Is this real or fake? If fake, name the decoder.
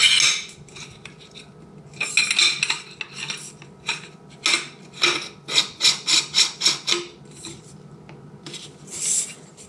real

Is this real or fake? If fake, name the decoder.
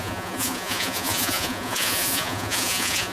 fake, vocoder, Vocos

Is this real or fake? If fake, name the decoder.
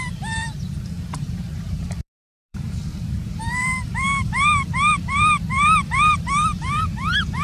fake, vocoder, BigVGAN v2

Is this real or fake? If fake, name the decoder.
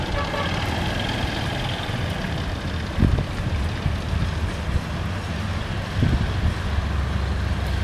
real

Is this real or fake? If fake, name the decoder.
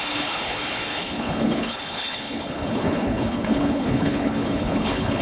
fake, codec, HILCodec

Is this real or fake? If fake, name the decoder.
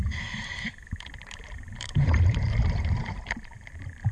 fake, vocoder, BigVGAN v2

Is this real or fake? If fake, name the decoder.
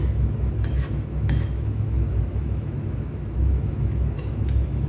fake, autoencoder, DAC-VAE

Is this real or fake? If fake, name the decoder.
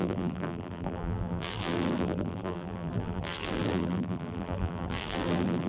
fake, vocoder, BigVGAN v2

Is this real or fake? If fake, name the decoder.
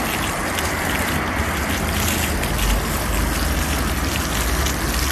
real